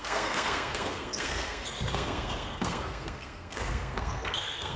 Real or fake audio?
fake